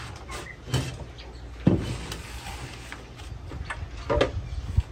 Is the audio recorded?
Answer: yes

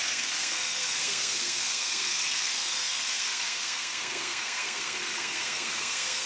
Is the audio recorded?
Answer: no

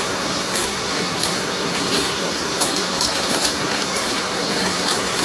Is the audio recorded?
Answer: no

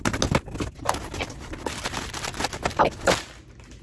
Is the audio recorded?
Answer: yes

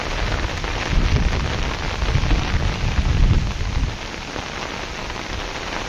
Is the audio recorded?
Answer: yes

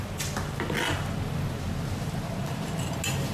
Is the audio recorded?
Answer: yes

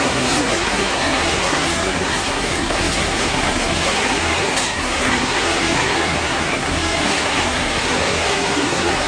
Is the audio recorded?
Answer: no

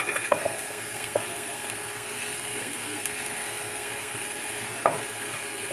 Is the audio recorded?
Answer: no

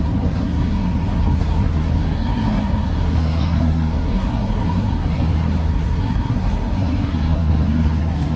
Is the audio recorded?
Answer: no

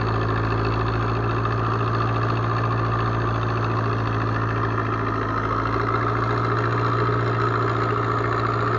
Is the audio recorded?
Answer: yes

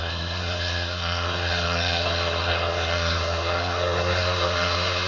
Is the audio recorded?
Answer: no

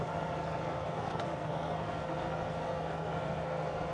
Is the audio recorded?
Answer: no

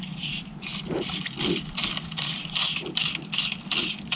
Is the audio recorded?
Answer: yes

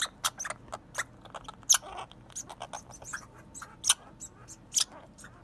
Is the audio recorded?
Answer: yes